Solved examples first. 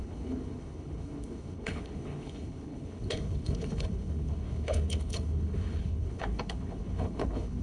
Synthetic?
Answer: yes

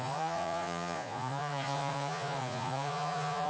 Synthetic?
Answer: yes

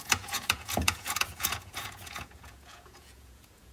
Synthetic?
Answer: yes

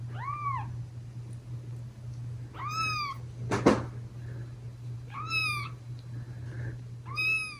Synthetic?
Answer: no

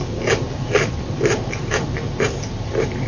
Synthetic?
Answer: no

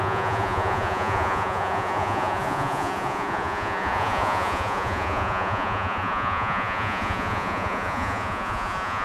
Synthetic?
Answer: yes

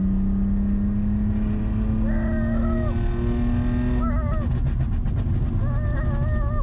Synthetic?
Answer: no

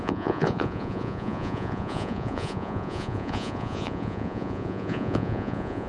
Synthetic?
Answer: yes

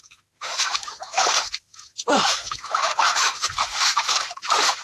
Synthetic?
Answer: yes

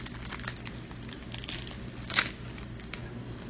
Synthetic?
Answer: no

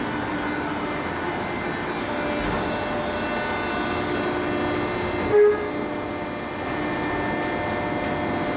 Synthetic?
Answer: no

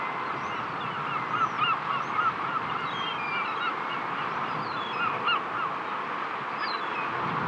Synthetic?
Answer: no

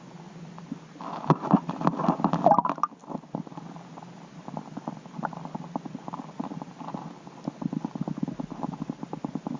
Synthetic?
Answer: no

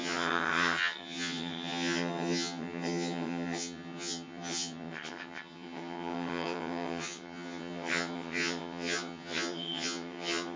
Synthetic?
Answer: yes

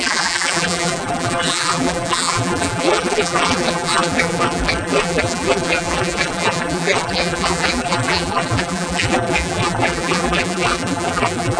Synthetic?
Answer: yes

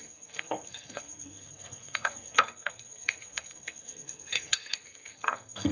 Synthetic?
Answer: yes